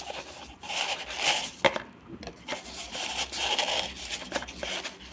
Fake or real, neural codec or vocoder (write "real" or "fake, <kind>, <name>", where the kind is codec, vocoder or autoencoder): real